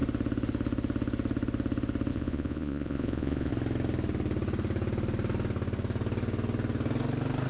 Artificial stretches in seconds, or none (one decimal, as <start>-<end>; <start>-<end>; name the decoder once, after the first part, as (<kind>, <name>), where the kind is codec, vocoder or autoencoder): 2.1-3.5 (vocoder, Vocos)